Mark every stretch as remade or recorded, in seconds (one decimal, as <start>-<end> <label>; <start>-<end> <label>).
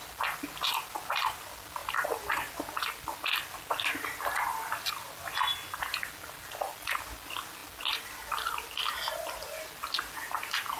0.0-10.8 recorded